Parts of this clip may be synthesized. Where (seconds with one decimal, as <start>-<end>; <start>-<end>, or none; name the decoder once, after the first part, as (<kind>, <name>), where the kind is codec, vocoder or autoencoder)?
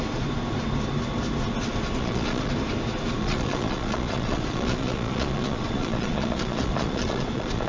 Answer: 2.0-2.5 (vocoder, Vocos); 3.2-7.7